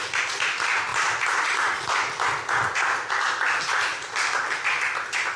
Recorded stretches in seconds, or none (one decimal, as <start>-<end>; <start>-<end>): 0.0-0.9; 2.3-3.9; 4.7-5.4